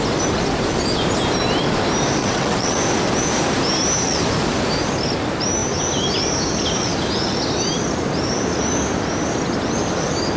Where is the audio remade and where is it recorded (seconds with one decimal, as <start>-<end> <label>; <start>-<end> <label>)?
0.0-2.2 recorded; 2.2-2.8 remade; 2.8-10.4 recorded